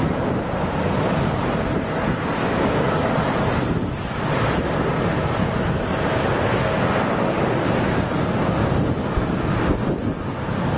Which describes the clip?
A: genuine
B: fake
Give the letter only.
A